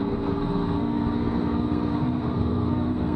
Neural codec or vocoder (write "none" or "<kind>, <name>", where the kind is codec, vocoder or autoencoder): codec, SNAC